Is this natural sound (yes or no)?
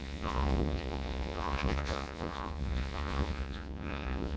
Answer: no